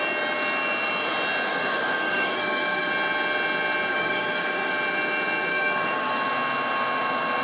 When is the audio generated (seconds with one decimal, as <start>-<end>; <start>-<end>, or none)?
1.5-2.9; 3.9-4.7; 5.5-6.1